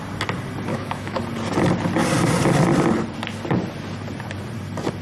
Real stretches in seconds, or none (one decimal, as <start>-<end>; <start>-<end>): 0.0-0.7; 1.2-5.0